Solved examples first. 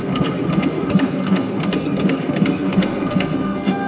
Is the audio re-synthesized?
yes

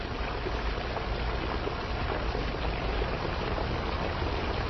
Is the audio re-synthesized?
no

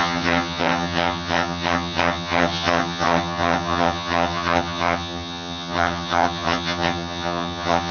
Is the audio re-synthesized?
yes